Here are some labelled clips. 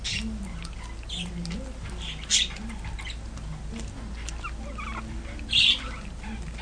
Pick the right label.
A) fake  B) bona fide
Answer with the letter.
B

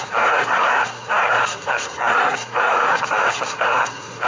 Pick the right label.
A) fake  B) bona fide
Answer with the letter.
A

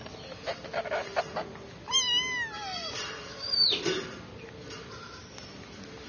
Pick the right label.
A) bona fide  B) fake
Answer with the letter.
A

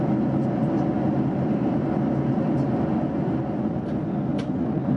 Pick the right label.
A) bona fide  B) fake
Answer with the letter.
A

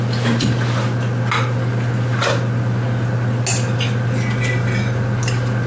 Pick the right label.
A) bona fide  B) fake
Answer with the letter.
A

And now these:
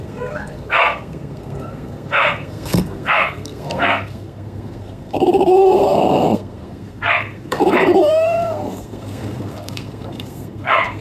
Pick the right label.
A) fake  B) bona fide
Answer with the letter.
A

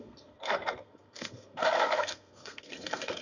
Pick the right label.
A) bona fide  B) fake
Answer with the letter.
B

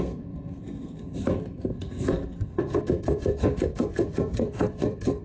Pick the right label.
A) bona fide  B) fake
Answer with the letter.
B